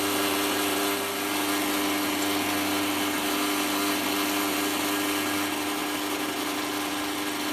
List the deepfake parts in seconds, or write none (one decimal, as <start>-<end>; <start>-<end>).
none